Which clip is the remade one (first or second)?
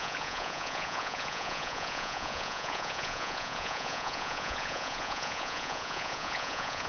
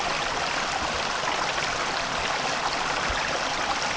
first